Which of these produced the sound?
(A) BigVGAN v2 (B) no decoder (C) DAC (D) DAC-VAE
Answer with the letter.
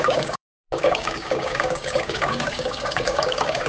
C